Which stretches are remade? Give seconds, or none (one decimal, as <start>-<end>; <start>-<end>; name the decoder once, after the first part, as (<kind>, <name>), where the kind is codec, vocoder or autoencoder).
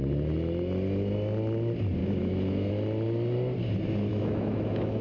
2.0-2.7 (autoencoder, DAC-VAE); 4.1-5.0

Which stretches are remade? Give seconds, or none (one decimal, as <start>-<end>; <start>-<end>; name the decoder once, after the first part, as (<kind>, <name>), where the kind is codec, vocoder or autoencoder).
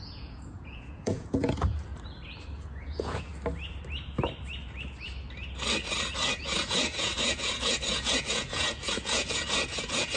0.0-1.9 (vocoder, Vocos); 2.6-3.3; 6.4-10.2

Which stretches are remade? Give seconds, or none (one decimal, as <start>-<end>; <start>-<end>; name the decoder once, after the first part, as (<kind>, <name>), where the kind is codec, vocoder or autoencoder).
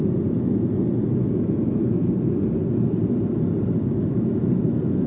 3.8-4.3 (codec, DAC)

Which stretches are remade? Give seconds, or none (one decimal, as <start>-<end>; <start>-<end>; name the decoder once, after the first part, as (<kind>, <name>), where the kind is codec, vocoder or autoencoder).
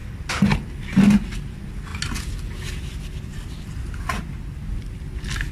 none